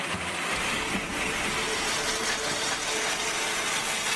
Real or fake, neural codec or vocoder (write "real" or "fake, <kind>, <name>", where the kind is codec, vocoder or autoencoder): real